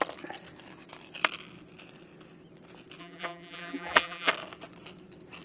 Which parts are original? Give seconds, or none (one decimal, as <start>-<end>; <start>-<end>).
0.0-3.0; 4.3-5.4